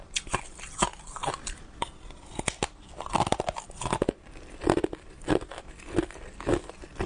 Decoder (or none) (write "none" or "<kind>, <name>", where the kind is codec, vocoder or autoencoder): none